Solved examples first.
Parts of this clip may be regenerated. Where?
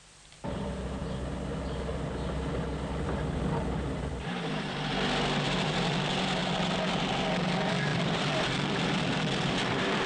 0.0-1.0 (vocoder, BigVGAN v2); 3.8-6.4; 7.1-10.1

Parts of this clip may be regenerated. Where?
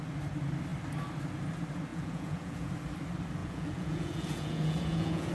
1.9-2.7 (vocoder, Vocos); 3.4-5.3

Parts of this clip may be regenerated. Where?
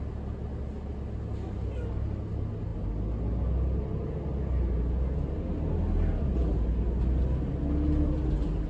none